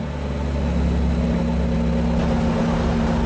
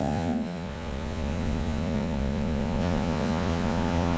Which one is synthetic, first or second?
second